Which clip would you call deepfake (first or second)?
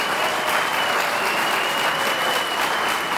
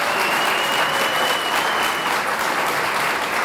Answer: first